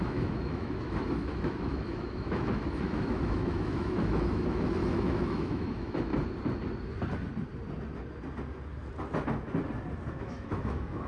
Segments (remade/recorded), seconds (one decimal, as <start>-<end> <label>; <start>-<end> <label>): 0.0-6.1 remade; 6.1-10.2 recorded; 10.2-11.1 remade